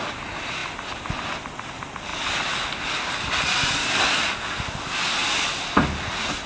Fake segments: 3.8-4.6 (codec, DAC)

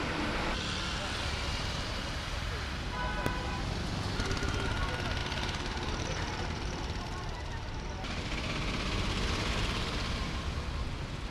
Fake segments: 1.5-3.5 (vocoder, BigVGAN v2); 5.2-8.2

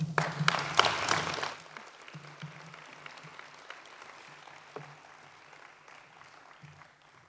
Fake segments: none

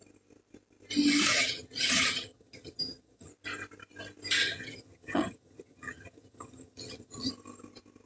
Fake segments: 1.3-3.3 (vocoder, HiFi-GAN); 4.4-7.3

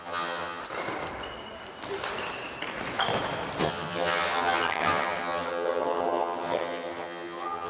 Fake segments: 0.0-0.6 (vocoder, HiFi-GAN); 3.6-7.7

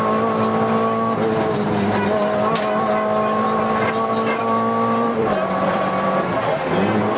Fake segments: 4.4-6.4 (vocoder, BigVGAN v2)